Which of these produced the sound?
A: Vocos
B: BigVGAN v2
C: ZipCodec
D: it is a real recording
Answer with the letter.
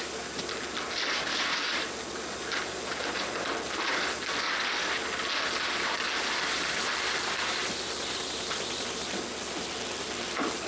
D